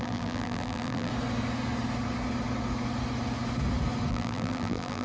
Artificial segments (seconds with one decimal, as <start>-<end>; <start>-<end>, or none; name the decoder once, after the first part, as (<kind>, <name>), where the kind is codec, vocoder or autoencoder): 0.0-1.1 (vocoder, BigVGAN v2); 4.1-5.0